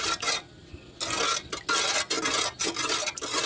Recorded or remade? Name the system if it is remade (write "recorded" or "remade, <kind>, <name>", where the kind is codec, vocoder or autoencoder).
recorded